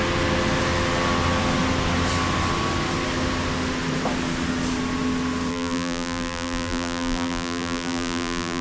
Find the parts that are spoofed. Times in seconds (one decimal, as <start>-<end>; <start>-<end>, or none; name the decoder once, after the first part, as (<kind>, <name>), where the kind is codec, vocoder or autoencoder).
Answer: 5.5-8.6 (vocoder, BigVGAN v2)